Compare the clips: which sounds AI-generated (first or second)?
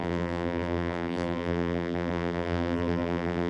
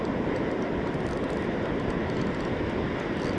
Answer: first